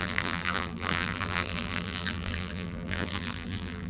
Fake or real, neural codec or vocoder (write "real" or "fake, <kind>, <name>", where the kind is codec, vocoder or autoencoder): fake, vocoder, BigVGAN v2